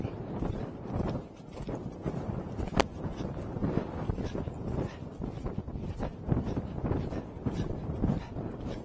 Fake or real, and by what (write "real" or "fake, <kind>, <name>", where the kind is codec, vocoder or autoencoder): real